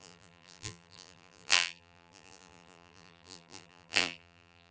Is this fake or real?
fake